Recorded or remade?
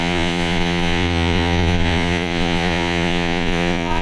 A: remade